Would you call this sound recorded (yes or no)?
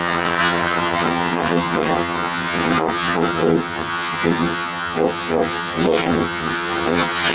no